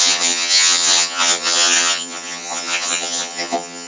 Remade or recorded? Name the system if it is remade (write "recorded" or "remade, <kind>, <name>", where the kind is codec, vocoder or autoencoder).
remade, vocoder, HiFi-GAN